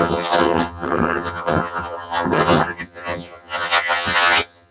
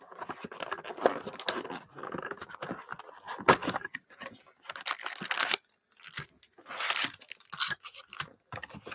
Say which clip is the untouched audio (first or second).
second